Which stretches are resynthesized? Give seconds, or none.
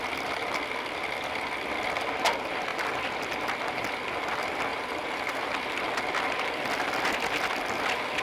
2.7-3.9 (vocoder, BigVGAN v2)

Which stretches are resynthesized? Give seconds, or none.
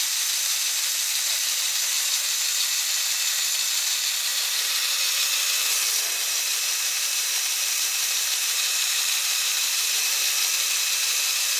4.3-4.8 (vocoder, BigVGAN v2); 6.9-10.2